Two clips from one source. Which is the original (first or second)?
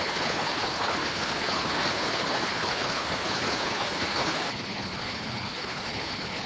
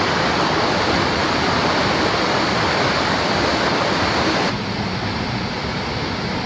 second